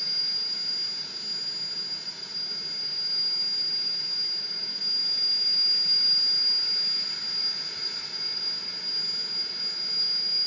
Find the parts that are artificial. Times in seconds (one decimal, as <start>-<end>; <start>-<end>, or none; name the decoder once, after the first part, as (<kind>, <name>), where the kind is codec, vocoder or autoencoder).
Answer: none